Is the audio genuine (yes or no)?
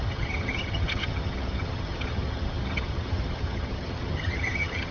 no